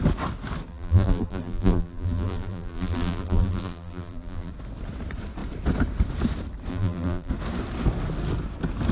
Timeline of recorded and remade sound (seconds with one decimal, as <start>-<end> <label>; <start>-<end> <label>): 0.0-0.7 recorded; 0.7-4.5 remade; 4.5-6.7 recorded; 6.7-7.3 remade; 7.3-8.9 recorded